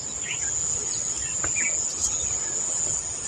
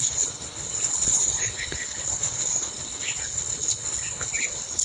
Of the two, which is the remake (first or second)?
second